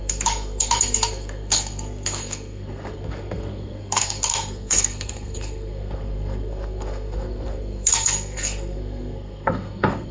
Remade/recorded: remade